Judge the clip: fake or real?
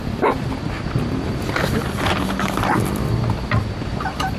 real